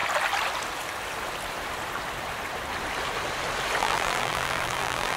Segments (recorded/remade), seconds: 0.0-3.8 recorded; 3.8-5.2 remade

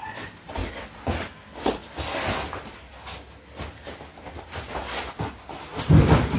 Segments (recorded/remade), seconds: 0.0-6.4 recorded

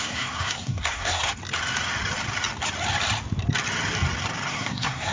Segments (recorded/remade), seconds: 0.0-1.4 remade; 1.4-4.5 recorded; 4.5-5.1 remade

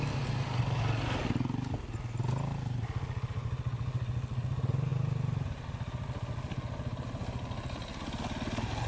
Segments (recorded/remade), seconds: 0.0-8.9 recorded

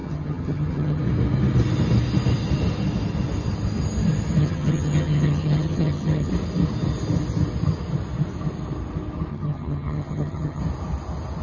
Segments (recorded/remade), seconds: 0.0-1.0 remade; 1.0-4.4 recorded; 4.4-6.3 remade; 6.3-9.3 recorded; 9.3-10.6 remade; 10.6-11.4 recorded

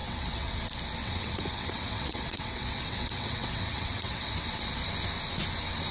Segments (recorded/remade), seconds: 0.0-0.6 remade; 0.6-1.0 recorded; 1.0-4.3 remade; 4.3-5.9 recorded

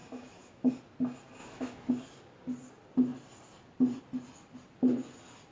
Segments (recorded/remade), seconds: 0.0-0.7 remade; 0.7-1.4 recorded; 1.4-1.9 remade; 1.9-5.5 recorded

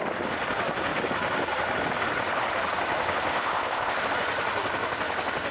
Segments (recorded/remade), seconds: 0.0-3.3 recorded; 3.3-4.0 remade; 4.0-5.5 recorded